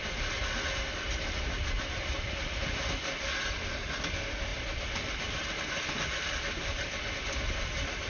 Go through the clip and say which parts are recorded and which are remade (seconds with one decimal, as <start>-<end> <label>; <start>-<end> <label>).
0.0-4.5 recorded; 4.5-8.1 remade